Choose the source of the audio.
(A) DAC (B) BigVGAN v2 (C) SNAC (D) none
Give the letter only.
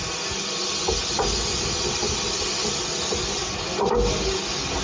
D